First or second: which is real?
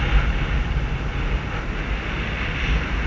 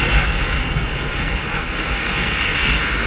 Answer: first